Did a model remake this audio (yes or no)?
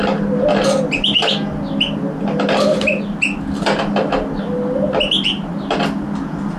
no